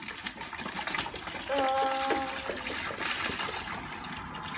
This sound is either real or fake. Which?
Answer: real